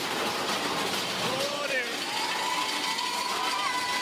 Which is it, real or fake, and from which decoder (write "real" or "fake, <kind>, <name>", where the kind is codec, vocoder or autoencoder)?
real